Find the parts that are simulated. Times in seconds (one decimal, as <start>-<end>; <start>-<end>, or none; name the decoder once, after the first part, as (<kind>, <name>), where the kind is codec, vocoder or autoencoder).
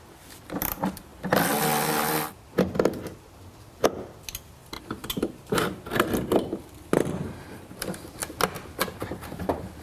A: none